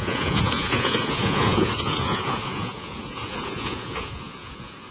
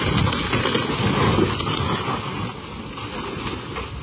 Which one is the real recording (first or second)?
second